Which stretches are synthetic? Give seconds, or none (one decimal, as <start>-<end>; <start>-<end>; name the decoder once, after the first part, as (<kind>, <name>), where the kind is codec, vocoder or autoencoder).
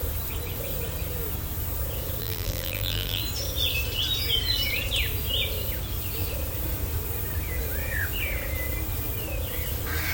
2.2-3.2 (vocoder, BigVGAN v2)